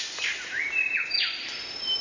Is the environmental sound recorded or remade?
recorded